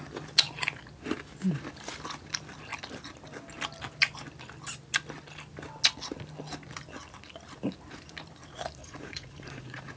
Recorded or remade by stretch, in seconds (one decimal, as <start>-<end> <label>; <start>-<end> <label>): 0.0-8.8 recorded; 8.8-10.0 remade